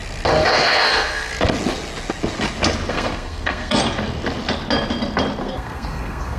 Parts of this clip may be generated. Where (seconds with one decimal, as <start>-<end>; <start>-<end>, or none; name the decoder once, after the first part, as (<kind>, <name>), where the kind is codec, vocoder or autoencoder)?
0.5-1.3 (codec, SNAC); 2.9-3.8; 5.4-6.4